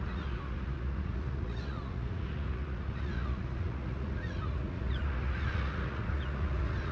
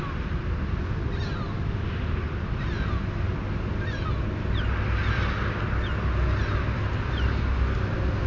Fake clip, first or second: first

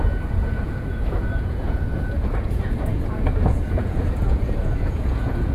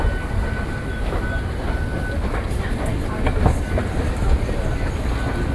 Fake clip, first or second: first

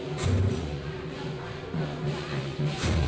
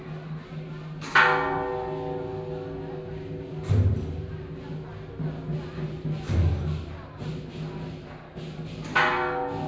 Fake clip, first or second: first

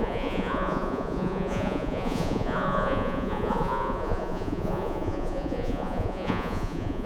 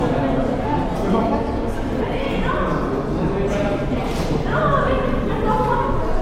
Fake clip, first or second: first